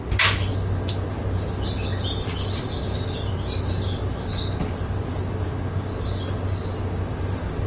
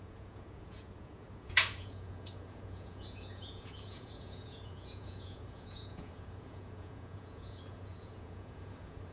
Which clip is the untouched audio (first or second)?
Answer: first